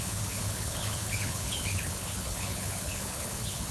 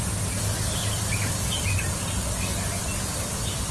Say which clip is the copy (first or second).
first